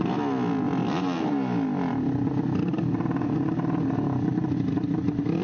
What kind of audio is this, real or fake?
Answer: real